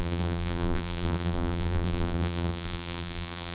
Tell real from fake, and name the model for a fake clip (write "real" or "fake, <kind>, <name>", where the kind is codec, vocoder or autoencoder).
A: fake, vocoder, BigVGAN v2